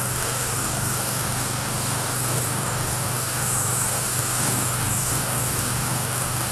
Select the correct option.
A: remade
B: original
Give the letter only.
A